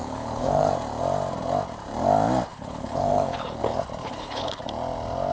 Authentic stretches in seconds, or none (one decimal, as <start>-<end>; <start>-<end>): 0.7-2.5; 3.6-4.0; 4.6-5.3